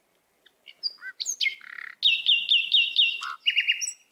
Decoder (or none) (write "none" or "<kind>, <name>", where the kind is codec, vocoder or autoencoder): none